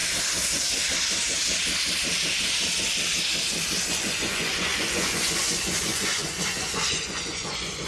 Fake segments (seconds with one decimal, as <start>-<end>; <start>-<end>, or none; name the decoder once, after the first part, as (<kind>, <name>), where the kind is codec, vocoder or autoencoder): 3.9-7.9 (vocoder, Vocos)

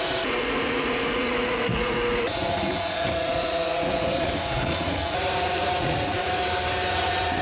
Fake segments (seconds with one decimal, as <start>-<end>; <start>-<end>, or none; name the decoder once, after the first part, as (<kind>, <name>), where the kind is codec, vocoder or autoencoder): 0.0-6.4 (vocoder, Vocos); 6.9-7.4